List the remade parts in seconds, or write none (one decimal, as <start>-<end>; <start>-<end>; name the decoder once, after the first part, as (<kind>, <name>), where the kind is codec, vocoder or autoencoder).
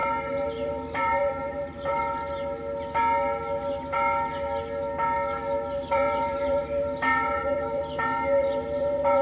0.0-1.9 (vocoder, BigVGAN v2); 5.9-9.2